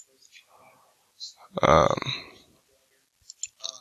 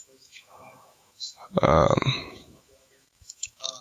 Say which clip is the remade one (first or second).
second